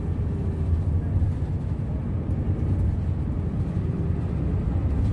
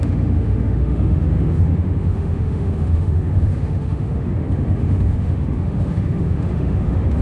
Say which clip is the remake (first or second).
second